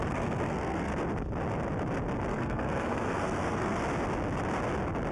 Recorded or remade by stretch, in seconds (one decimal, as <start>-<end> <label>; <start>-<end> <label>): 0.0-0.9 remade; 0.9-2.3 recorded; 2.3-3.8 remade; 3.8-5.1 recorded